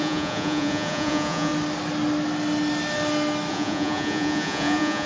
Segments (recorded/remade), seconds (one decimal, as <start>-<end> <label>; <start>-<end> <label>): 0.0-1.5 remade; 1.5-3.5 recorded; 3.5-5.1 remade